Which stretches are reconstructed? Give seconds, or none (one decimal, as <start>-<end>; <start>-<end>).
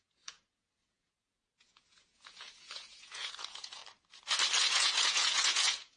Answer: 0.0-3.8; 4.6-6.0